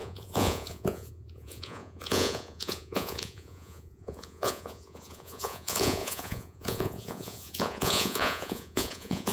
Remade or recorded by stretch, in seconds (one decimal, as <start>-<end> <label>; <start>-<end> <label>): 0.0-9.3 remade